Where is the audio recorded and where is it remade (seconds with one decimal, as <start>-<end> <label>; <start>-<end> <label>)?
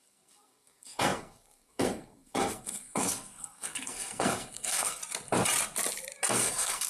0.0-5.0 remade; 5.0-6.3 recorded; 6.3-6.9 remade